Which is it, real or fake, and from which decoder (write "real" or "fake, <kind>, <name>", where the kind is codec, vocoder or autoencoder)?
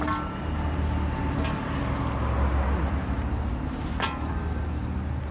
real